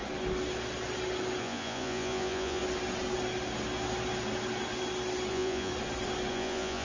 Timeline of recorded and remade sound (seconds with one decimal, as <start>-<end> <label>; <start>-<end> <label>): 0.0-1.4 recorded; 1.4-2.6 remade; 2.6-5.3 recorded; 5.3-5.7 remade; 5.7-6.3 recorded; 6.3-6.8 remade